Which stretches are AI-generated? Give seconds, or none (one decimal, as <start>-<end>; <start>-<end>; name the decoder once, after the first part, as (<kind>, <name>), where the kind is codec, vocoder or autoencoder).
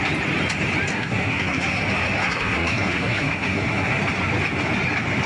0.9-1.8 (codec, SNAC); 2.2-4.0